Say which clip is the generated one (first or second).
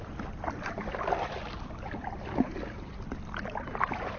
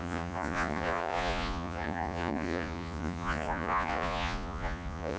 second